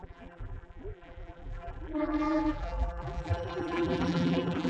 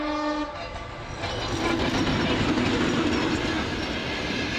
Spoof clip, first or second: first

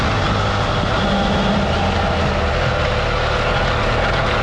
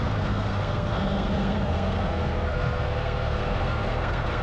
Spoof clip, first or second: second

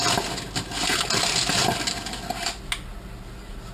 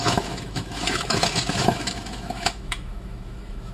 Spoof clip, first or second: second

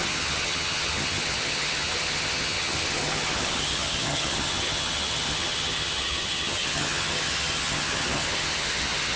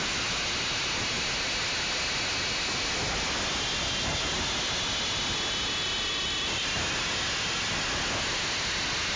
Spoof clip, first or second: first